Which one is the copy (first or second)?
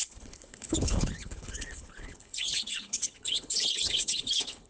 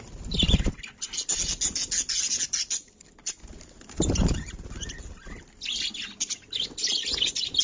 first